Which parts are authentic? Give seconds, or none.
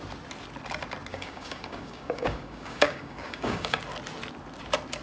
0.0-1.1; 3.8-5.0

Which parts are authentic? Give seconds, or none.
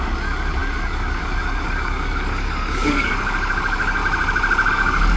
4.0-4.7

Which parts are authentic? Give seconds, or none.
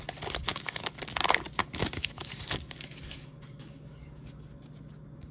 0.0-0.5; 1.0-1.6; 4.6-5.3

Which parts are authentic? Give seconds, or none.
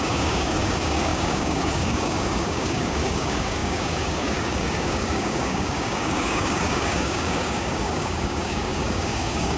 none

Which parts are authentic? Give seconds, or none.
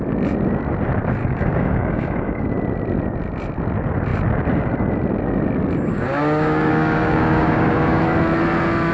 0.0-1.2; 2.3-5.9; 8.0-8.9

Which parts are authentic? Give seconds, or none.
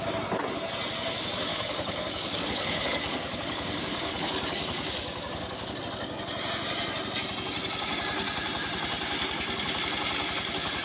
0.0-1.5; 5.8-10.8